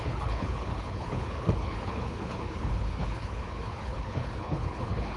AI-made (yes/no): yes